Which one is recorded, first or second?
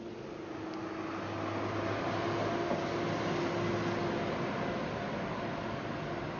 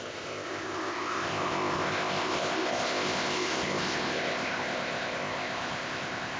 first